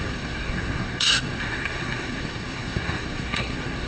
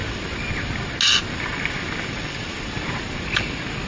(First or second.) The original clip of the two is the second